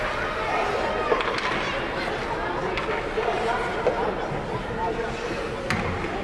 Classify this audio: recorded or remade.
recorded